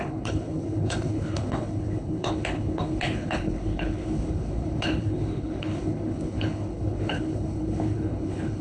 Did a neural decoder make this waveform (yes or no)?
yes